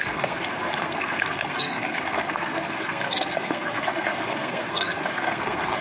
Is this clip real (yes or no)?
no